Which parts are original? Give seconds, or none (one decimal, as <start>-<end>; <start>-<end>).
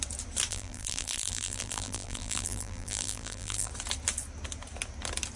0.0-0.5; 3.7-5.4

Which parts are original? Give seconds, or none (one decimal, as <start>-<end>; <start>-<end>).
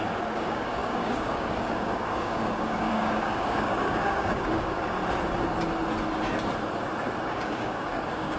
5.0-7.2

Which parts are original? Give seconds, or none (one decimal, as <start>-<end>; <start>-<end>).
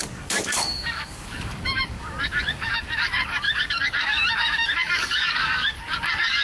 none